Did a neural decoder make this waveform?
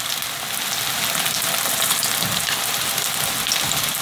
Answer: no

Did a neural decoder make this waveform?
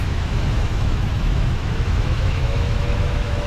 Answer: yes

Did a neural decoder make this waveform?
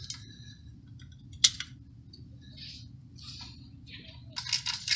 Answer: no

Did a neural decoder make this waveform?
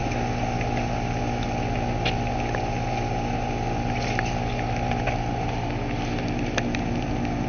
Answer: no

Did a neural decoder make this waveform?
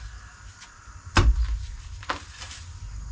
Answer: no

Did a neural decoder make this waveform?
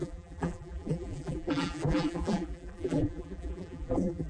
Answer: yes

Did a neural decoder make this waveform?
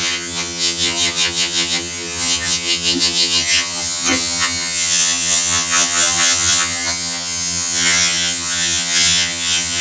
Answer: yes